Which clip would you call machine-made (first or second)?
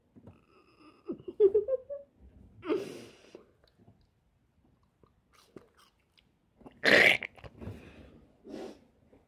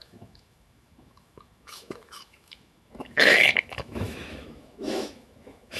second